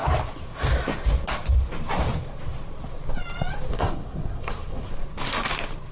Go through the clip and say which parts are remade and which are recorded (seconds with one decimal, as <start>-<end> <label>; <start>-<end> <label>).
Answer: 0.0-3.7 recorded; 3.7-4.9 remade; 4.9-5.9 recorded

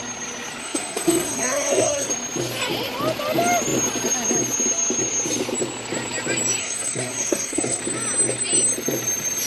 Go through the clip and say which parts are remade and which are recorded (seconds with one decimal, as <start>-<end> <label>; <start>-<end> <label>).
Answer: 0.0-0.6 recorded; 0.6-2.1 remade; 2.1-6.6 recorded; 6.6-7.8 remade; 7.8-9.5 recorded

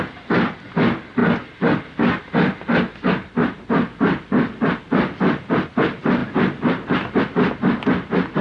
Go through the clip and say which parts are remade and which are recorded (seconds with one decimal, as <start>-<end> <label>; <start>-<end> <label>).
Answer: 0.0-8.4 recorded

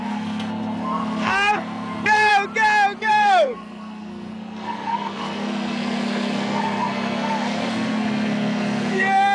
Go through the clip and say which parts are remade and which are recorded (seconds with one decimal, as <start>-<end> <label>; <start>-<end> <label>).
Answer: 0.0-2.3 remade; 2.3-3.0 recorded; 3.0-9.3 remade

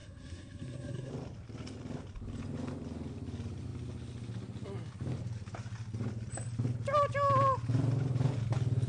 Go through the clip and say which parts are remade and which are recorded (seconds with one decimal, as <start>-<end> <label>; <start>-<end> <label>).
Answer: 0.0-1.1 remade; 1.1-8.9 recorded

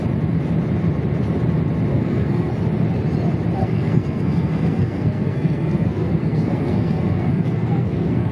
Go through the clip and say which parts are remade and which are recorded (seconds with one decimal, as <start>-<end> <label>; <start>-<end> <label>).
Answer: 0.0-1.9 recorded; 1.9-2.5 remade; 2.5-3.6 recorded; 3.6-8.3 remade

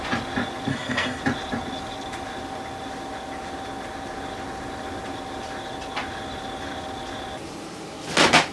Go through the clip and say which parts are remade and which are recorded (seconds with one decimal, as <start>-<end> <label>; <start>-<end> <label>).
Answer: 0.0-0.7 recorded; 0.7-1.2 remade; 1.2-8.5 recorded